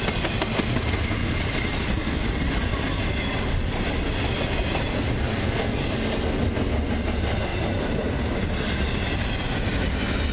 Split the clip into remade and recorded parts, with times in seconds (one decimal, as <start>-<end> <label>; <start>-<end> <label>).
0.0-5.3 recorded; 5.3-5.9 remade; 5.9-10.3 recorded